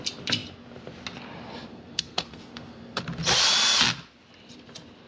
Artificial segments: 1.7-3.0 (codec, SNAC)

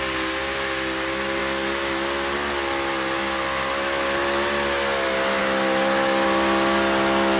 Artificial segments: none

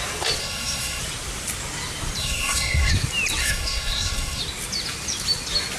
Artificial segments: 0.4-1.0 (codec, SNAC); 2.2-2.9; 3.4-4.4

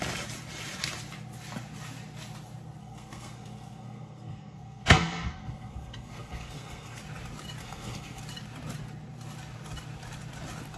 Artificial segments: 2.8-7.0 (codec, SNAC); 7.6-8.2